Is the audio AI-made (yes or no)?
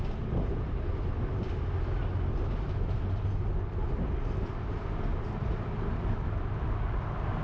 no